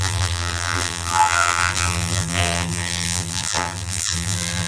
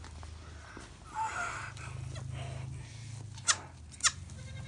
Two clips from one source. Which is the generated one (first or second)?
first